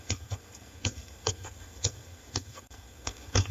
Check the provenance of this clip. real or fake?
fake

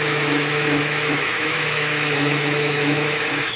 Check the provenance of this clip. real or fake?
fake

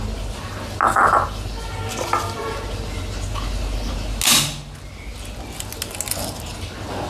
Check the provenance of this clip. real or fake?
real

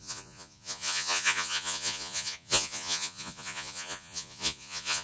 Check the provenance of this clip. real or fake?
fake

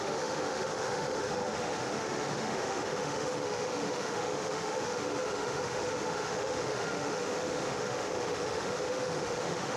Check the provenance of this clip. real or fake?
fake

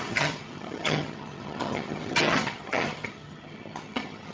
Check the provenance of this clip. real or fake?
fake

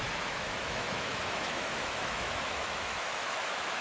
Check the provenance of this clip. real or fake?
fake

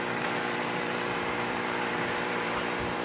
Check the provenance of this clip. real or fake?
fake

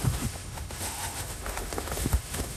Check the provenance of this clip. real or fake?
fake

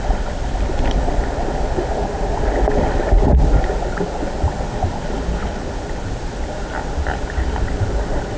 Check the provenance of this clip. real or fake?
real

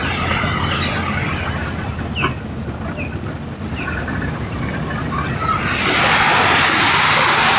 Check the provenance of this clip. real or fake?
real